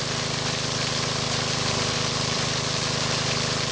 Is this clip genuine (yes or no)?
no